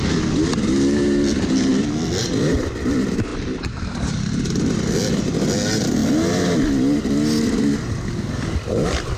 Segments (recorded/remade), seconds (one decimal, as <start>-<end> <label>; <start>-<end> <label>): 0.0-3.3 recorded; 3.3-4.1 remade; 4.1-9.2 recorded